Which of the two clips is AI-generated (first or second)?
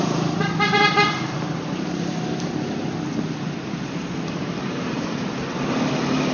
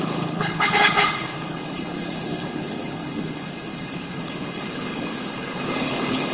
second